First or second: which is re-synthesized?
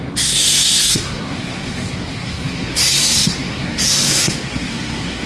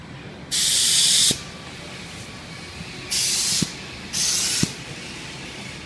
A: first